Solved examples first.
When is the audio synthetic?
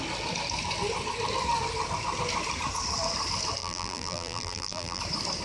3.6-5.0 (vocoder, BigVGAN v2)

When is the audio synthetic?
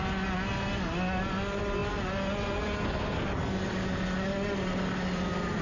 none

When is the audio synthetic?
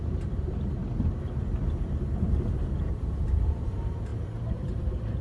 0.0-0.8 (vocoder, BigVGAN v2); 1.7-5.2